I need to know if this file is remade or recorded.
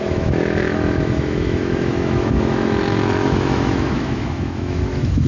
remade